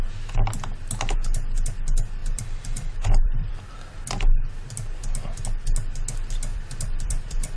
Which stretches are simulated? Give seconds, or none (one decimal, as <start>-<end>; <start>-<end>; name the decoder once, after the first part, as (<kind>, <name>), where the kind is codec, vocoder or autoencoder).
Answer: 2.2-4.0 (vocoder, BigVGAN v2); 6.5-7.6